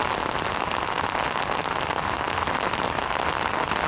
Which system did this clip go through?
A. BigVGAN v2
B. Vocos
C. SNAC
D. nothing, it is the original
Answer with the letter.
D